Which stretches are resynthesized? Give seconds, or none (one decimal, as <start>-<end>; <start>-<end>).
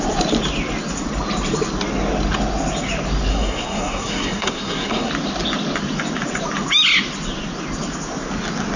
3.3-5.1